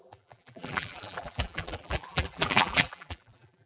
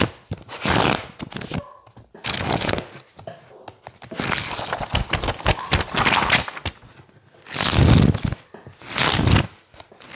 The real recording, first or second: second